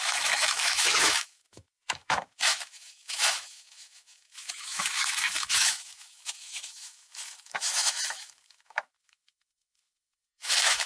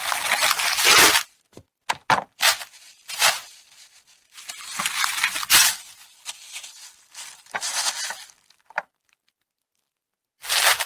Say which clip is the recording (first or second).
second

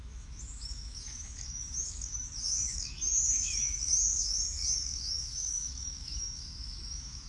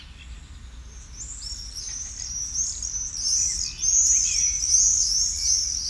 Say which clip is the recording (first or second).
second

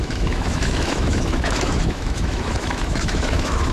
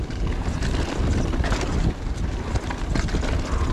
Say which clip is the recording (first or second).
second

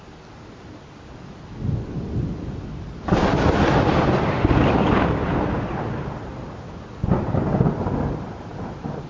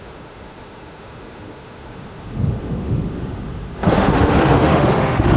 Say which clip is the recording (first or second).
first